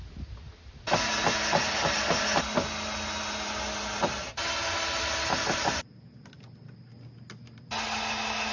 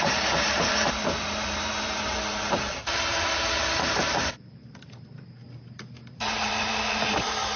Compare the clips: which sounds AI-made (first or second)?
second